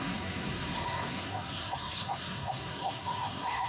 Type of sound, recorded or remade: remade